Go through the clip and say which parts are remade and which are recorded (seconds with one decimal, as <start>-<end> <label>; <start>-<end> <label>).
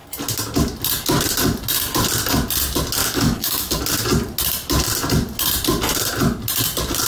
0.0-3.0 recorded; 3.0-3.8 remade; 3.8-7.1 recorded